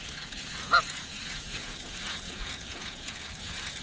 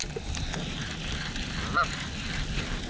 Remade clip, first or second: first